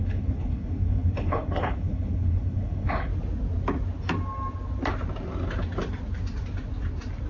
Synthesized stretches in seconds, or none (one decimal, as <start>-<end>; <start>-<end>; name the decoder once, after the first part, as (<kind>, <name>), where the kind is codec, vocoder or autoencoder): 0.0-3.1 (codec, HILCodec)